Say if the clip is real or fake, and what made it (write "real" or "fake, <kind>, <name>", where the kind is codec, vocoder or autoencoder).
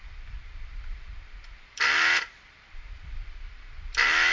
fake, vocoder, BigVGAN v2